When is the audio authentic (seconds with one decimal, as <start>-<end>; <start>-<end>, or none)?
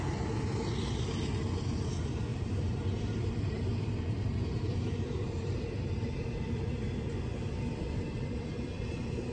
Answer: 0.0-2.3; 6.7-9.3